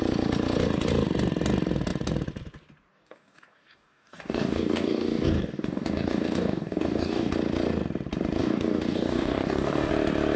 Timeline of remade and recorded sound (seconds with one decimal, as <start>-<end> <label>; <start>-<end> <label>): 0.0-2.9 recorded; 2.9-7.3 remade; 7.3-8.4 recorded; 8.4-9.9 remade; 9.9-10.4 recorded